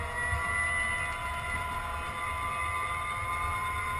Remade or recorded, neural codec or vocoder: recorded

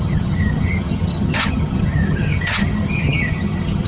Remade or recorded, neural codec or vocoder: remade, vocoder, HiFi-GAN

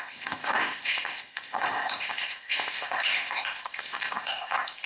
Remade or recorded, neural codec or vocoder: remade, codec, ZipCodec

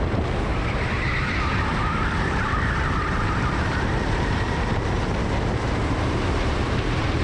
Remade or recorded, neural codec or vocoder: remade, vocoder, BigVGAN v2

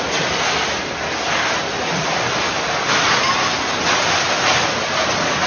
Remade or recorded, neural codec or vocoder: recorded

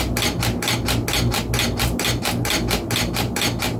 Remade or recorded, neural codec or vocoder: recorded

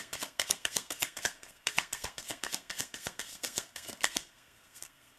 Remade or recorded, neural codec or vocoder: remade, codec, SNAC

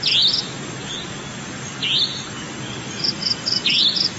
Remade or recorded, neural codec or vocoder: recorded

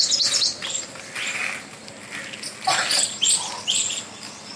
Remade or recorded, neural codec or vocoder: recorded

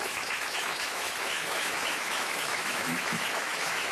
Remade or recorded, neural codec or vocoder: remade, autoencoder, DAC-VAE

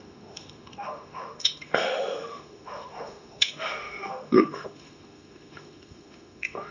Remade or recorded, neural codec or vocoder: remade, autoencoder, DAC-VAE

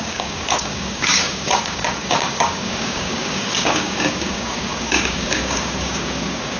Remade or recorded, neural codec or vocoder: remade, codec, DAC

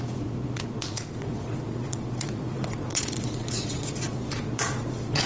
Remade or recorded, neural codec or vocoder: remade, vocoder, Vocos